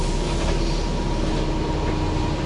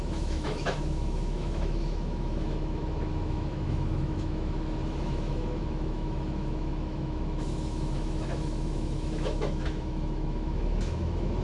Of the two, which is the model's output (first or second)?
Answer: second